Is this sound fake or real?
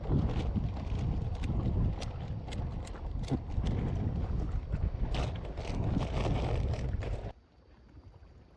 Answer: real